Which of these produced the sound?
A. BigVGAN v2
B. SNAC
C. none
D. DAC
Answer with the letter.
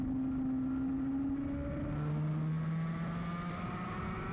C